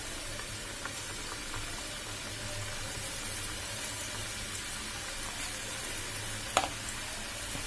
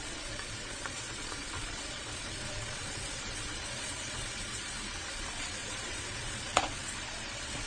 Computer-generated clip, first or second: second